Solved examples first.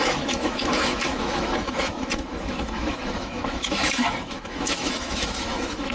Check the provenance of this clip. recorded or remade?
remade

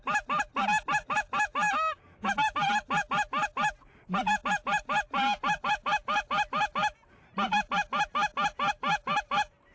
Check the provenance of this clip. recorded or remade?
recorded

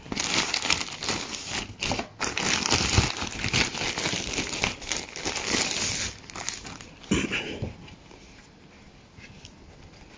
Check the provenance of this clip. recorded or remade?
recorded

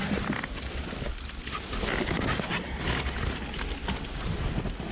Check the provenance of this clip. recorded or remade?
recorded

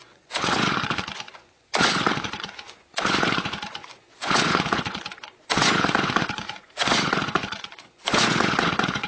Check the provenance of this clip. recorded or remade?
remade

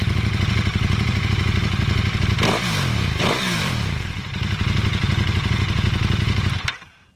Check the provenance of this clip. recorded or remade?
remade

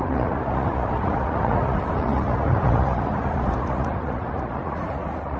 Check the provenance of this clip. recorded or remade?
remade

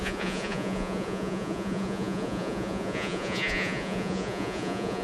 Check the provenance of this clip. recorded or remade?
remade